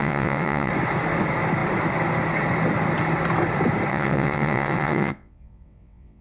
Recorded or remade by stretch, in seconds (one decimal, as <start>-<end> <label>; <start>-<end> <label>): 0.0-0.7 remade; 0.7-3.9 recorded; 3.9-6.2 remade